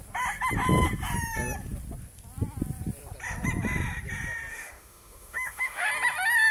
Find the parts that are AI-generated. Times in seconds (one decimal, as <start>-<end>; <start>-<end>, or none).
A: 4.5-5.9